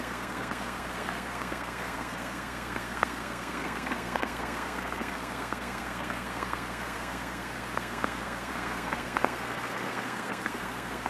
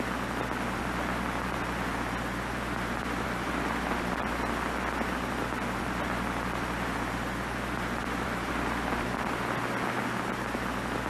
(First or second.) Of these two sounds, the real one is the second